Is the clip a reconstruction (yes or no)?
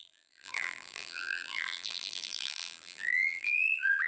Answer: yes